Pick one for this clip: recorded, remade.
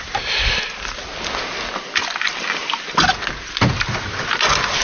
recorded